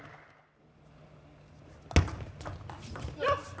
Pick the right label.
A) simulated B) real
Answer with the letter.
B